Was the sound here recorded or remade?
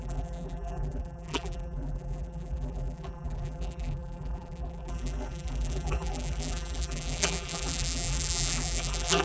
remade